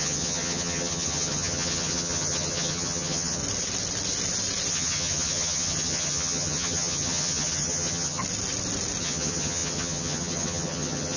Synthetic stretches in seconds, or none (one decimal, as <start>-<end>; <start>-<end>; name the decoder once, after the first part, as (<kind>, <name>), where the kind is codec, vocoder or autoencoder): 0.0-3.4 (vocoder, HiFi-GAN); 4.7-8.2; 9.0-11.2